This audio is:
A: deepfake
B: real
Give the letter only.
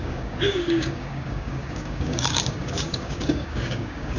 A